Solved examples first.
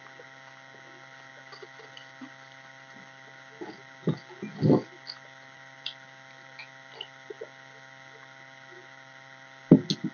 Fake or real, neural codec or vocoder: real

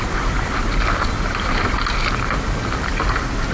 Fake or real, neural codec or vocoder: real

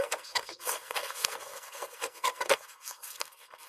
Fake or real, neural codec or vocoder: fake, codec, SNAC